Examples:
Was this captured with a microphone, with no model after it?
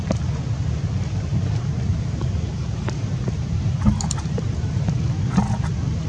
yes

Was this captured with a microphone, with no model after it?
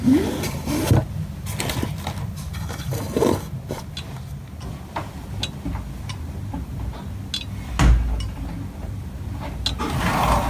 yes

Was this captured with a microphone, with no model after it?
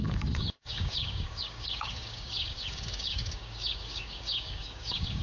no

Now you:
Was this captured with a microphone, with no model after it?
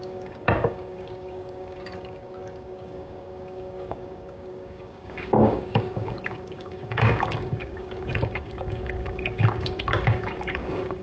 no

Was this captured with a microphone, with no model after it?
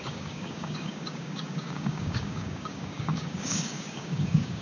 no